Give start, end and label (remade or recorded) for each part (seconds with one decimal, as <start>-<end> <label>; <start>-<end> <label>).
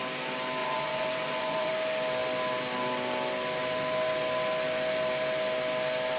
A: 0.0-0.6 recorded; 0.6-1.7 remade; 1.7-6.2 recorded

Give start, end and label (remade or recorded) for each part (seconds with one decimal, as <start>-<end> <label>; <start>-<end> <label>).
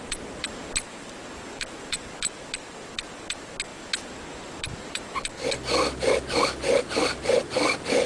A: 0.0-8.1 recorded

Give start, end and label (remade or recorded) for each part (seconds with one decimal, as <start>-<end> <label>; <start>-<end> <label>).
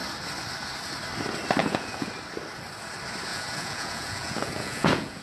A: 0.0-1.6 recorded; 1.6-2.1 remade; 2.1-3.3 recorded; 3.3-5.2 remade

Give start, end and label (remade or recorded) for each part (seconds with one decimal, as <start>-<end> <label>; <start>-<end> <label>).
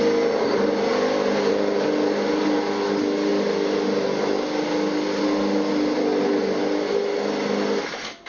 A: 0.0-8.3 recorded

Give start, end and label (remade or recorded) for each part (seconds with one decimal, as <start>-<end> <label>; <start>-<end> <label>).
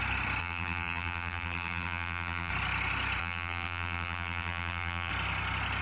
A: 0.0-0.4 recorded; 0.4-2.5 remade; 2.5-3.2 recorded; 3.2-5.1 remade; 5.1-5.8 recorded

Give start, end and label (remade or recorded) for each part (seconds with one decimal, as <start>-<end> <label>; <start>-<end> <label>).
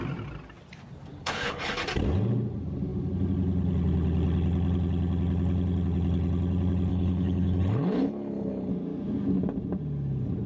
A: 0.0-1.2 recorded; 1.2-1.7 remade; 1.7-6.9 recorded; 6.9-8.7 remade; 8.7-10.5 recorded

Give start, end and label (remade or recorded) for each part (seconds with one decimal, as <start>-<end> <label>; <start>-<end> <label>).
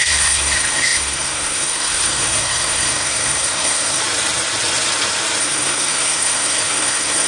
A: 0.0-4.0 remade; 4.0-5.4 recorded; 5.4-7.3 remade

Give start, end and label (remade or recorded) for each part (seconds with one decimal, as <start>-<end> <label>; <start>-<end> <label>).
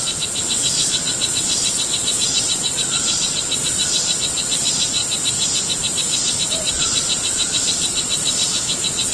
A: 0.0-5.0 remade; 5.0-6.5 recorded; 6.5-9.1 remade